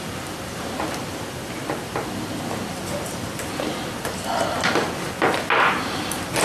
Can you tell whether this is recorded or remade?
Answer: recorded